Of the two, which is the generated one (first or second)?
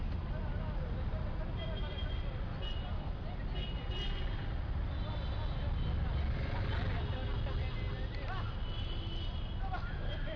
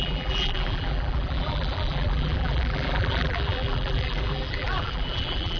second